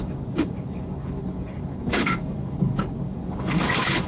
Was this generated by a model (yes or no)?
yes